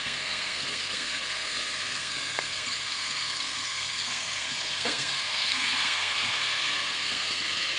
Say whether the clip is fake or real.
fake